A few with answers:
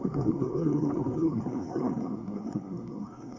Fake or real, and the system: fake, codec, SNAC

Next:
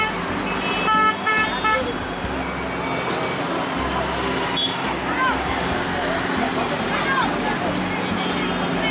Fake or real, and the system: real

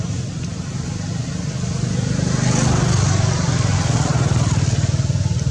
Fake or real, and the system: real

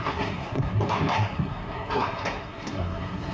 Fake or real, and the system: fake, codec, SNAC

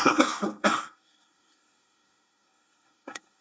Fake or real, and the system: fake, codec, SNAC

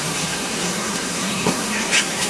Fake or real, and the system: fake, codec, SNAC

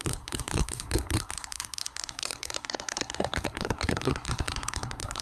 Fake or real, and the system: fake, codec, SNAC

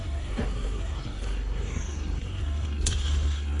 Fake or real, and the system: fake, codec, SNAC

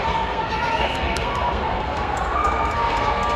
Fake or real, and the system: fake, codec, SNAC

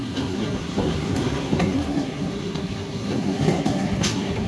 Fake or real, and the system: fake, codec, SNAC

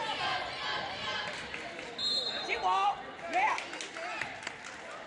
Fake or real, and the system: real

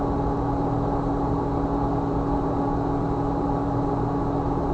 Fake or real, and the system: real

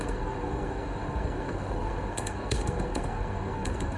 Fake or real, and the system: fake, codec, SNAC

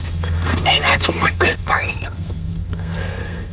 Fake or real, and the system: fake, codec, SNAC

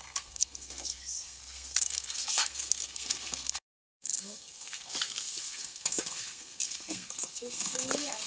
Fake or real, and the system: fake, codec, SNAC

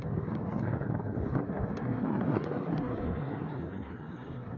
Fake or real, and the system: fake, codec, SNAC